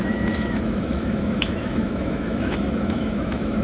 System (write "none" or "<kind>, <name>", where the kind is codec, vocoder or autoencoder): autoencoder, DAC-VAE